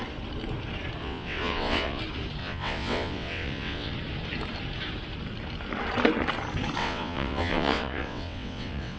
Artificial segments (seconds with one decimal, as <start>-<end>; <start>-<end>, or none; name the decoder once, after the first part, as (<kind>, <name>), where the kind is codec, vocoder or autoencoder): 1.0-2.0 (vocoder, WaveNeXt); 2.4-3.9; 6.8-9.0